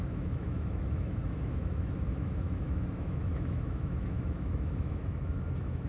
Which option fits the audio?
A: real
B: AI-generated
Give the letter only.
B